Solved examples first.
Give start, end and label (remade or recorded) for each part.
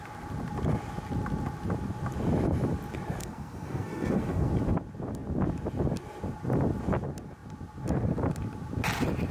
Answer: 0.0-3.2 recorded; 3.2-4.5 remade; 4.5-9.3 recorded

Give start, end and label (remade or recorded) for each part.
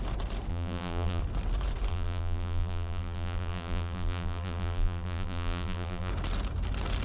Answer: 0.0-0.5 recorded; 0.5-1.2 remade; 1.2-1.9 recorded; 1.9-6.1 remade; 6.1-7.0 recorded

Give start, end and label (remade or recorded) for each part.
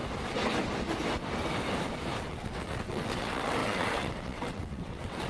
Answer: 0.0-2.3 recorded; 2.3-5.3 remade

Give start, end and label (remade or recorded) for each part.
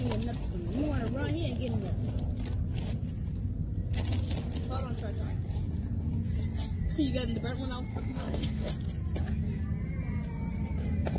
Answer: 0.0-7.9 recorded; 7.9-8.7 remade; 8.7-11.2 recorded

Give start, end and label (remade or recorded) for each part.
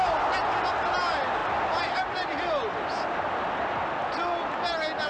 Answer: 0.0-5.1 recorded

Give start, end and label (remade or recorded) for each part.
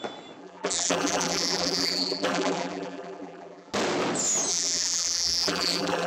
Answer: 0.0-0.4 recorded; 0.4-3.7 remade; 3.7-4.5 recorded; 4.5-6.1 remade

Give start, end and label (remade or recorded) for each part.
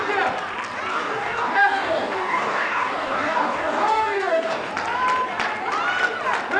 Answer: 0.0-0.9 recorded; 0.9-4.7 remade; 4.7-6.6 recorded